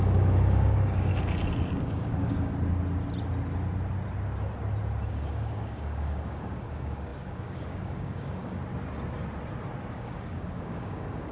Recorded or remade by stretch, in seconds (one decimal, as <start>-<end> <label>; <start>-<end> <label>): 0.0-1.1 remade; 1.1-1.7 recorded; 1.7-2.5 remade; 2.5-5.1 recorded; 5.1-8.6 remade; 8.6-9.9 recorded; 9.9-11.3 remade